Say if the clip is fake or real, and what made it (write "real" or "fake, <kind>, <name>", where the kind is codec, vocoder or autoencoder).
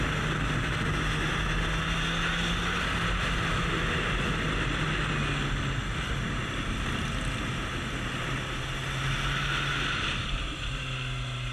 real